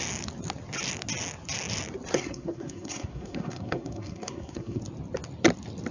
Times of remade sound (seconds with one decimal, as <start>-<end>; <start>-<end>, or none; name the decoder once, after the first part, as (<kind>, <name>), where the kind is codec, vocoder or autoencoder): 2.1-4.8 (codec, SNAC)